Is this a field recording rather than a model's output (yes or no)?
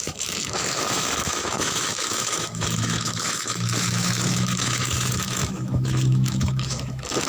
no